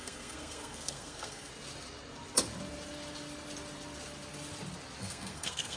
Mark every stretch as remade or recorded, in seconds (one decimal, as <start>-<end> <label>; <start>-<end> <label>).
0.0-1.5 remade; 1.5-5.0 recorded; 5.0-5.8 remade